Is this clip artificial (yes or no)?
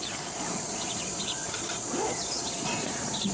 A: yes